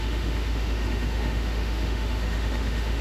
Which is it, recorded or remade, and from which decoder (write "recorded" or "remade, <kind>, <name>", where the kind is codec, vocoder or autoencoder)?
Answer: remade, autoencoder, DAC-VAE